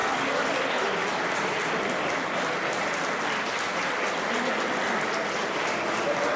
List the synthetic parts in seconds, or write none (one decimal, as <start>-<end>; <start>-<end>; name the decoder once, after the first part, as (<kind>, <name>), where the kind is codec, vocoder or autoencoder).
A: none